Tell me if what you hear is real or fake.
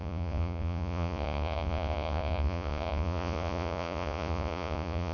fake